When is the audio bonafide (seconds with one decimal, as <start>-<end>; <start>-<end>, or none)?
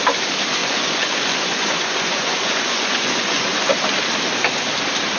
0.0-0.6; 3.7-5.2